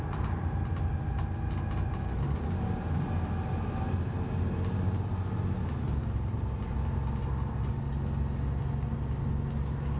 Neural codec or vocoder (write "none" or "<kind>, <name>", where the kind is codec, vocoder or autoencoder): none